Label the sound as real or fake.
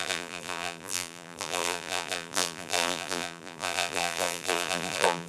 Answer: fake